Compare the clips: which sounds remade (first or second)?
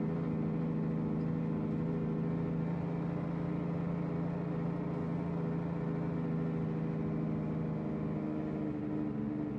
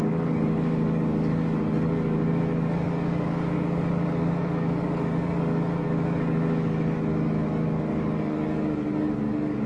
second